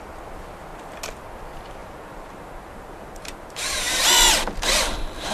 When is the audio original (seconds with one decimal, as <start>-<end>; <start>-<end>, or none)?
0.0-1.8; 4.0-5.3